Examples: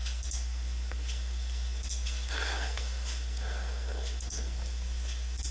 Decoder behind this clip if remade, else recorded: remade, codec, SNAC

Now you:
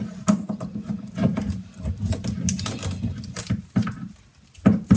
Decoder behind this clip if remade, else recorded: recorded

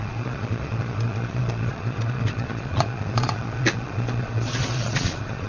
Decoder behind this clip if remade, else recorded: remade, vocoder, Vocos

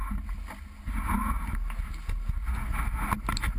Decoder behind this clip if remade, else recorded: recorded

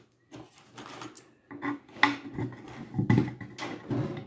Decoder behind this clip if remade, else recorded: recorded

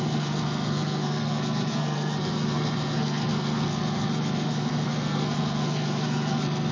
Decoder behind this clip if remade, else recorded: remade, codec, SNAC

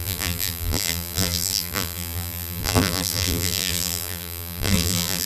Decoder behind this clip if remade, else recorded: remade, vocoder, BigVGAN v2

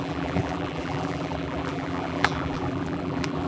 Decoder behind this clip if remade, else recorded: remade, vocoder, BigVGAN v2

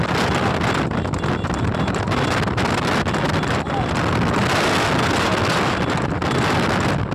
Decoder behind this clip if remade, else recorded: recorded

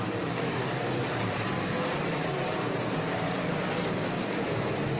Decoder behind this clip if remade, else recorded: remade, vocoder, BigVGAN v2